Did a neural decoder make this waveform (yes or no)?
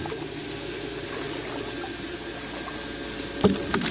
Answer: no